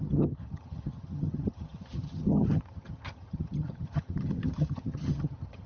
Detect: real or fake fake